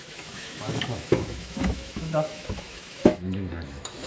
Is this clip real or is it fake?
fake